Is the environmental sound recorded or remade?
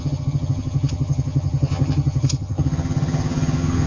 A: remade